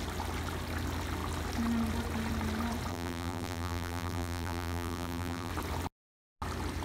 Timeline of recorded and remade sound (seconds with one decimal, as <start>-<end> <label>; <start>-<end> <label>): 0.0-2.9 recorded; 2.9-5.5 remade; 5.5-6.8 recorded